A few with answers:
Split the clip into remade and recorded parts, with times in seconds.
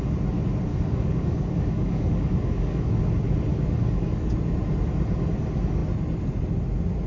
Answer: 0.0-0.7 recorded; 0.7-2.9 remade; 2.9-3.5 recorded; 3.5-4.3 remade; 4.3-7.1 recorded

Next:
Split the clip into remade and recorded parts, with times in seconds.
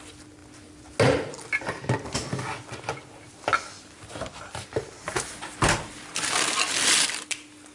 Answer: 0.0-7.7 recorded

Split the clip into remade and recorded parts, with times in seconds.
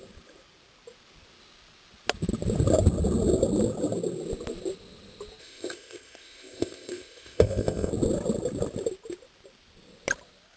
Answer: 0.0-5.4 recorded; 5.4-7.9 remade; 7.9-10.6 recorded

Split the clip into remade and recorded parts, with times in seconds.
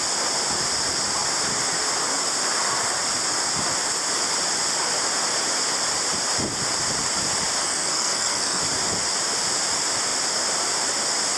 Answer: 0.0-7.6 recorded; 7.6-8.6 remade; 8.6-11.4 recorded